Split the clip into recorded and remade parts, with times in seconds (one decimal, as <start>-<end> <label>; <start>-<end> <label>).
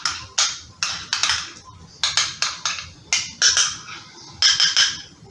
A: 0.0-5.3 recorded